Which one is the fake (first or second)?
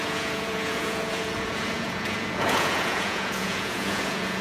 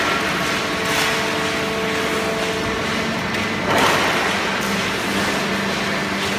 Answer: first